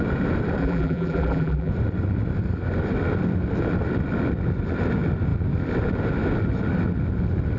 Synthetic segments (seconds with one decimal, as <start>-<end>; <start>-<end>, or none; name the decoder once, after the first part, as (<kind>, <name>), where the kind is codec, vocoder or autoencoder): 0.6-1.7 (vocoder, BigVGAN v2)